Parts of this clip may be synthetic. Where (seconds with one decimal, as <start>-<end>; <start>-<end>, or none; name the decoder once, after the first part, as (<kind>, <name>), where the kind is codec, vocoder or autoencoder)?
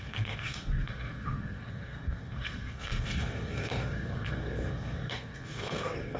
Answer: 0.0-6.2 (codec, SNAC)